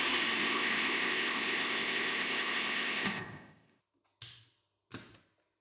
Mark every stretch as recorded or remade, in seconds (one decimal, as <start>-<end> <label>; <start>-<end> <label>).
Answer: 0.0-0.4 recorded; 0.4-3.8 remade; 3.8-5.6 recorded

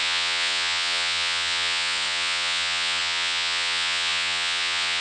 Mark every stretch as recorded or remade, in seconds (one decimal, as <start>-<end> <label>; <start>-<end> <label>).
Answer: 0.0-5.0 remade

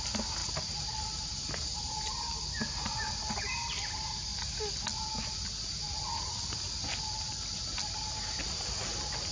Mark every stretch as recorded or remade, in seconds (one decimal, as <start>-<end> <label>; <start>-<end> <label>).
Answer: 0.0-0.4 recorded; 0.4-3.1 remade; 3.1-9.3 recorded

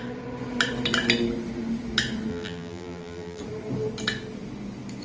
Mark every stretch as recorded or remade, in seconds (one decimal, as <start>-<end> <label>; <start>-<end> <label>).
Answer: 0.0-2.3 recorded; 2.3-3.4 remade; 3.4-5.0 recorded